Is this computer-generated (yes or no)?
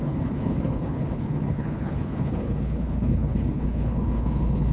yes